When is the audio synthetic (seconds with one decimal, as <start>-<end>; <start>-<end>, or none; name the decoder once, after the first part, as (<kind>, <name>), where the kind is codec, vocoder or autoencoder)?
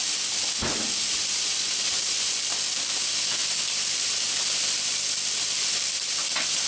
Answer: none